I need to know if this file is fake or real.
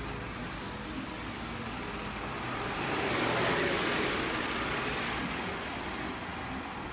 real